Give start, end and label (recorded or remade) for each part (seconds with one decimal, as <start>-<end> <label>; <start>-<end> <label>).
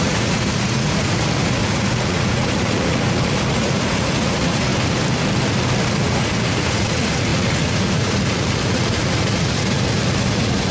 0.0-4.7 remade; 4.7-5.9 recorded; 5.9-10.7 remade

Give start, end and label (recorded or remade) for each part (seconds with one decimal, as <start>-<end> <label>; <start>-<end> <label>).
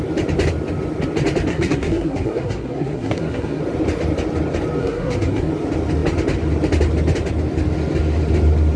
0.0-1.5 recorded; 1.5-3.6 remade; 3.6-4.8 recorded; 4.8-5.5 remade; 5.5-8.8 recorded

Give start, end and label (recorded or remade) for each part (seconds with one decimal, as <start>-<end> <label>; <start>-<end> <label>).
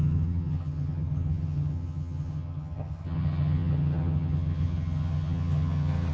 0.0-6.1 remade